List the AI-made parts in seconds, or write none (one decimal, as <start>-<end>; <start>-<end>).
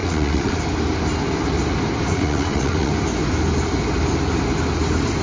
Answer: 0.0-0.6; 2.1-2.9